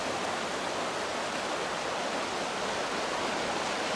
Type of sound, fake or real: real